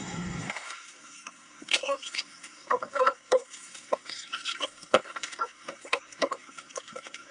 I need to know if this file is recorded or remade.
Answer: remade